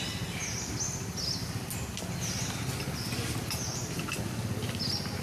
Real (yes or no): yes